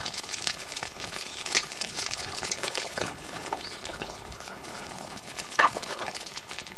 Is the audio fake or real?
fake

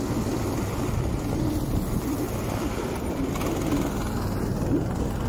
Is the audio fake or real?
real